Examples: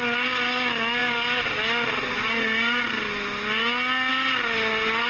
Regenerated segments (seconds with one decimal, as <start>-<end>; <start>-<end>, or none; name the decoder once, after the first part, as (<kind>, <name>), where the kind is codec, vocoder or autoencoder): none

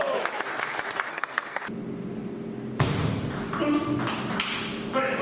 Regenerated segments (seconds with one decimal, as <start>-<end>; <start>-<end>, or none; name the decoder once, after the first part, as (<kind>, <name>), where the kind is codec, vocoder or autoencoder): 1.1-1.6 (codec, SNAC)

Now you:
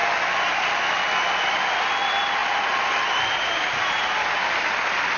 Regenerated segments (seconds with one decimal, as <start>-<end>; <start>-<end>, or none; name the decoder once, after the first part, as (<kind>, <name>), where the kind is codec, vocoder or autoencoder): none

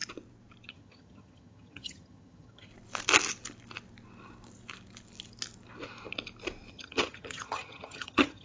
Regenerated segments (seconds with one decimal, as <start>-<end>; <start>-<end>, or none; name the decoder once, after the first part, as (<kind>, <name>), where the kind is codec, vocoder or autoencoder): 0.7-2.7 (vocoder, HiFi-GAN); 6.7-8.4

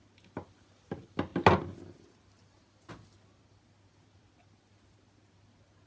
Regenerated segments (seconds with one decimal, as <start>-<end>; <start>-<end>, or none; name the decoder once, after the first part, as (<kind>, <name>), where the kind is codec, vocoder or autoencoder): none

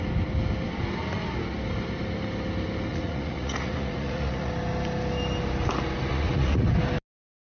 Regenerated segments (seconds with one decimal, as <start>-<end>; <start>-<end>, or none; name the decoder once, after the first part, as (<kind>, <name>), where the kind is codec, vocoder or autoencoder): 2.9-4.5 (vocoder, Vocos); 6.1-6.7